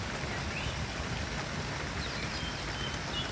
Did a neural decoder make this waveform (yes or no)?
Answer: no